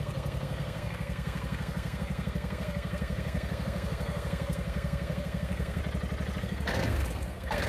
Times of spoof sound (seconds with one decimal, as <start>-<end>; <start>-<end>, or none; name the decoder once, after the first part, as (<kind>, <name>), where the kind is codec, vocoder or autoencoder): 0.0-5.8 (codec, SNAC); 6.4-7.7